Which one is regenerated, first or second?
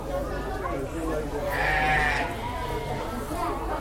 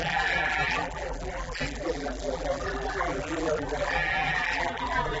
second